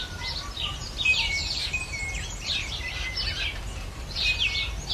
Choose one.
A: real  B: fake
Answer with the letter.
B